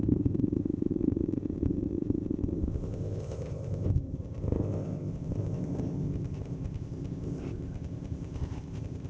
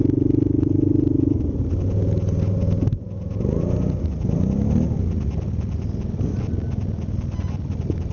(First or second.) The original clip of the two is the second